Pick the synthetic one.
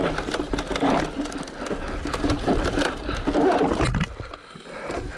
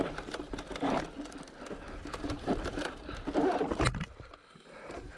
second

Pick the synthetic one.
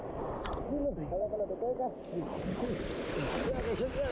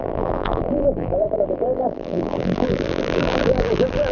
second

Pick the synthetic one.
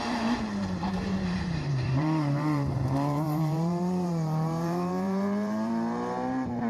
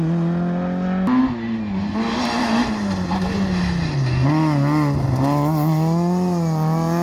first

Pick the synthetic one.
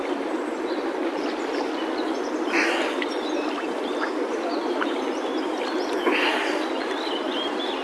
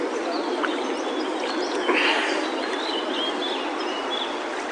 first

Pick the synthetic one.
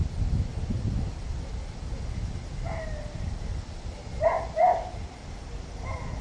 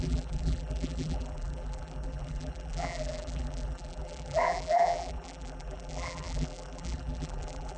second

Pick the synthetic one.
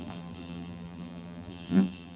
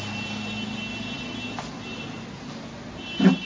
first